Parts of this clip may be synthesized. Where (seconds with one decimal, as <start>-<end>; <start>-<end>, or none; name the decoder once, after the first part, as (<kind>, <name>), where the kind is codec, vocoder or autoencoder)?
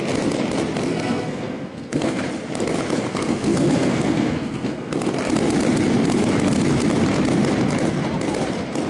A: 0.8-2.2 (codec, SNAC); 3.1-4.9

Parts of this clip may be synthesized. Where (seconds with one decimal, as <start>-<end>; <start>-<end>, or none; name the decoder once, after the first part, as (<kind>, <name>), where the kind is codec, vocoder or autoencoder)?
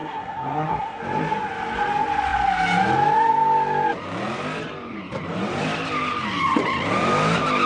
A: 0.0-1.0 (codec, SNAC)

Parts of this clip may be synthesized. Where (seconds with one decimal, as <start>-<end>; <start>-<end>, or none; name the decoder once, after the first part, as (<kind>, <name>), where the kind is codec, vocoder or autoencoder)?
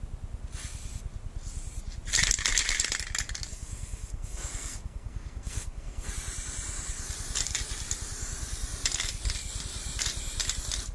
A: 3.5-6.1 (codec, SNAC)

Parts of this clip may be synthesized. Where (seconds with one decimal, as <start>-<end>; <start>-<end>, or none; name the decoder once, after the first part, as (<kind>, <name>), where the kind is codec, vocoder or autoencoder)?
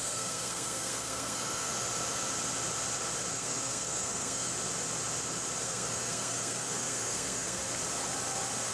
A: 0.0-1.7 (codec, SNAC); 3.3-4.5; 5.6-7.6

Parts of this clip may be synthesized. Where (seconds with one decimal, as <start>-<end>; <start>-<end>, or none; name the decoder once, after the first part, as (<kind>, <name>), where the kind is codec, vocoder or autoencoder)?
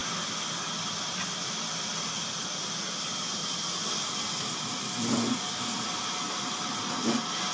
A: none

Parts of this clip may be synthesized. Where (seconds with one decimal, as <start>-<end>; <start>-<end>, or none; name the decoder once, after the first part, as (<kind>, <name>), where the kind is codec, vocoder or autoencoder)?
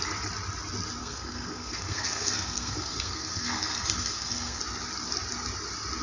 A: 1.0-4.6 (codec, SNAC)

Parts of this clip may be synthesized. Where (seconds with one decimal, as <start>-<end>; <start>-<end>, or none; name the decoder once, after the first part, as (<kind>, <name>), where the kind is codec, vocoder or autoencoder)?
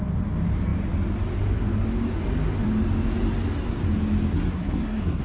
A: 4.3-5.2 (codec, SNAC)